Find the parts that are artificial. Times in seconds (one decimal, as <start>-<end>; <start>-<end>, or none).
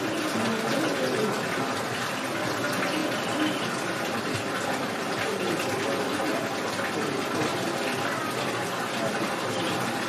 none